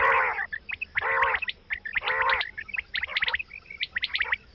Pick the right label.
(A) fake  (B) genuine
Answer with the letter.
B